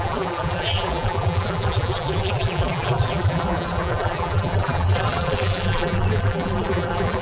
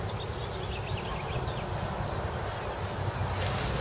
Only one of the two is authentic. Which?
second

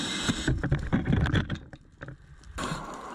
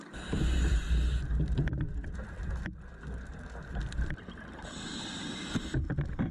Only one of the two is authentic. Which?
second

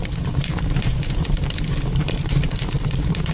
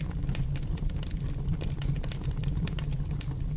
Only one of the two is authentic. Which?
second